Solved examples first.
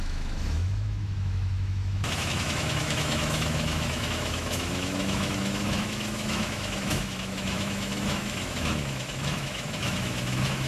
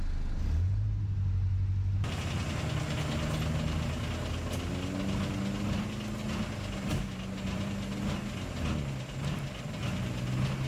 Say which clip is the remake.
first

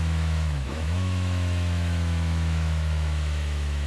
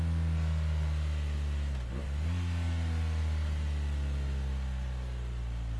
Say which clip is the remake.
first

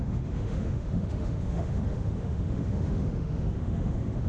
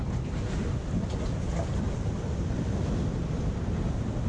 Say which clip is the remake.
first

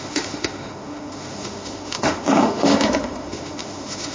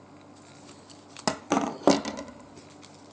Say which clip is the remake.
first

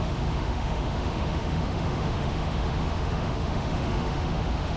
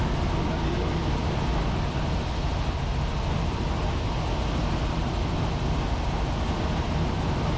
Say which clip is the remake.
first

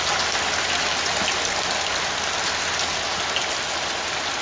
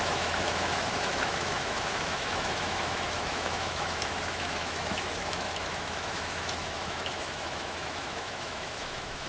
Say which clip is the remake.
second